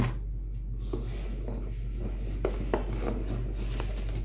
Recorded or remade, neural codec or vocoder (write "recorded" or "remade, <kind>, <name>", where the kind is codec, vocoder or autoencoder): recorded